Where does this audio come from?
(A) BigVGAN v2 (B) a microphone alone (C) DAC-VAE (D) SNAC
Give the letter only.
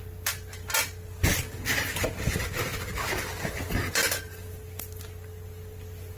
B